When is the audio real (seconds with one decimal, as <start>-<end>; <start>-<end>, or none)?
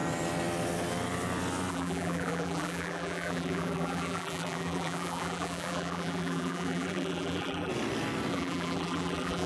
0.0-1.7; 7.7-8.3